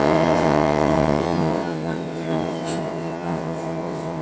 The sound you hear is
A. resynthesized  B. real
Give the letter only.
A